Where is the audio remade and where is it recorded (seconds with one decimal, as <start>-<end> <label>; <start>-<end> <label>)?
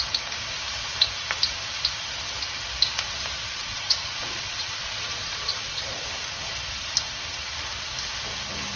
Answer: 0.0-3.4 recorded; 3.4-6.1 remade; 6.1-8.8 recorded